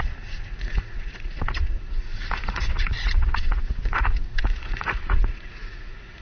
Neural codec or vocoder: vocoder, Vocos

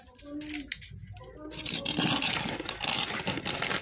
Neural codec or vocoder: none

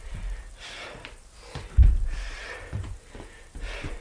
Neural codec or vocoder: vocoder, BigVGAN v2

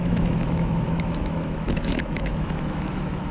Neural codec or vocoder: autoencoder, DAC-VAE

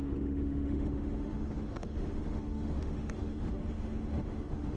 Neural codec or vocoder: autoencoder, DAC-VAE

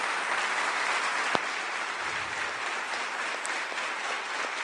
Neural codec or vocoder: vocoder, BigVGAN v2